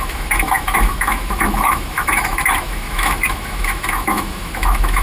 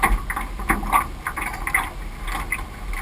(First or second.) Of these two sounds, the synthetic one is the first